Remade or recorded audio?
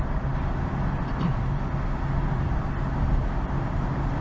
recorded